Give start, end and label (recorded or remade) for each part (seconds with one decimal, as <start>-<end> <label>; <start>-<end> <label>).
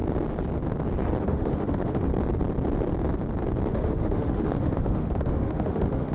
0.0-1.2 recorded; 1.2-2.1 remade; 2.1-3.7 recorded; 3.7-6.1 remade